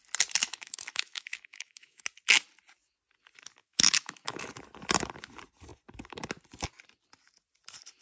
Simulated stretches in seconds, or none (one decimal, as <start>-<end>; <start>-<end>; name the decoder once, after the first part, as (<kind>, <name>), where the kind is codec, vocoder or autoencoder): 0.4-2.0 (autoencoder, DAC-VAE); 3.6-4.5